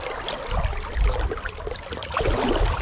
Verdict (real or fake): real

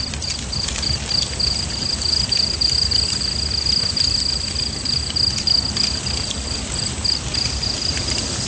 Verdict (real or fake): fake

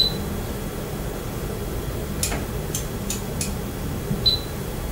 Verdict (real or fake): real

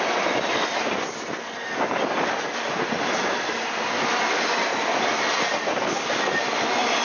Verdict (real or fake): real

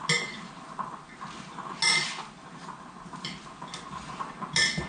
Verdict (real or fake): real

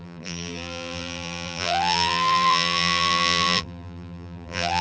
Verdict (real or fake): fake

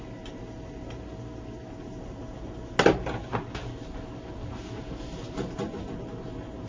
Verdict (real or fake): real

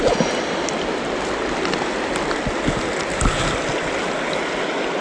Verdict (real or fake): real